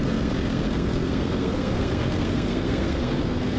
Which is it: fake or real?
fake